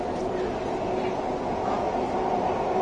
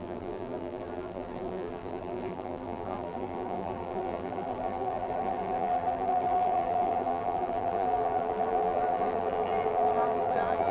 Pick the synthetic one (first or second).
second